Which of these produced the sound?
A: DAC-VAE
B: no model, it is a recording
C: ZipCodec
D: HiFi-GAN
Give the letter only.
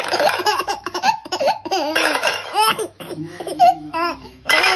A